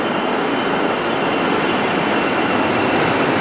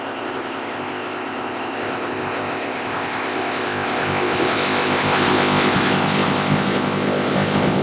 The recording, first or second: first